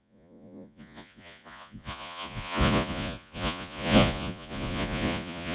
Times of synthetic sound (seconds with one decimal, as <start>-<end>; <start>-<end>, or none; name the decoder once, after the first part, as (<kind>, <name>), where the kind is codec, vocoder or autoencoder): 0.0-5.5 (vocoder, Vocos)